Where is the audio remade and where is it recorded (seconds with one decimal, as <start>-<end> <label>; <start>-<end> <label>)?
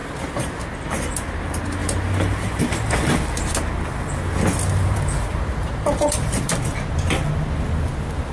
0.0-0.6 remade; 0.6-1.8 recorded; 1.8-2.6 remade; 2.6-4.8 recorded; 4.8-6.5 remade; 6.5-8.3 recorded